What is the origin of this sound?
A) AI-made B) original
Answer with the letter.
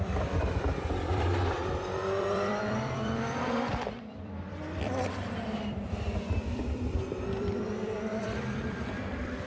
A